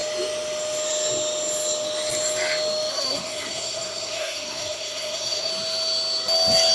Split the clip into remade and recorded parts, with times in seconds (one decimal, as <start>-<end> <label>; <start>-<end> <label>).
0.0-2.9 recorded; 2.9-5.5 remade; 5.5-6.7 recorded